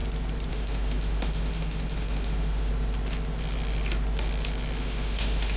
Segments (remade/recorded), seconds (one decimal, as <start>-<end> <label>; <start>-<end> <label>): 0.0-0.5 recorded; 0.5-2.7 remade; 2.7-4.8 recorded; 4.8-5.6 remade